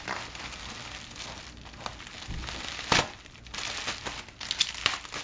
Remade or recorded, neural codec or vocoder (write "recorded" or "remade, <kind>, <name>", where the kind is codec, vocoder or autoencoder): recorded